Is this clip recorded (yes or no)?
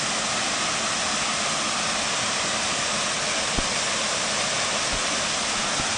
yes